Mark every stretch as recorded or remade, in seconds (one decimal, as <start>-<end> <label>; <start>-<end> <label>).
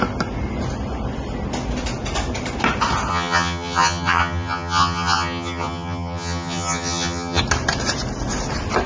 0.0-3.1 recorded; 3.1-7.4 remade; 7.4-8.9 recorded